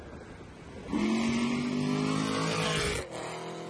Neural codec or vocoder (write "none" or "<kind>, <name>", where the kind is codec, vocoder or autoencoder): none